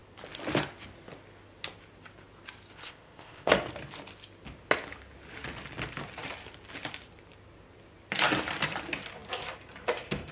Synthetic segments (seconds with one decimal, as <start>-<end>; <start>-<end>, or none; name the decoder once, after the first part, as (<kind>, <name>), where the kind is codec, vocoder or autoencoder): 2.8-3.5 (codec, ZipCodec)